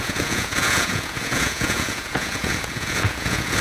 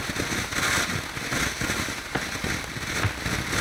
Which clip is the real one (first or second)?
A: second